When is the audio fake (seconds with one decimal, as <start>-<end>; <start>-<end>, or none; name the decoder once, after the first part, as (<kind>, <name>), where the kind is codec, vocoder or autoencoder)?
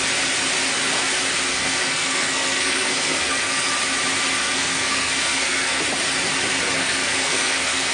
1.5-3.7 (codec, SNAC); 4.4-5.8; 6.8-7.9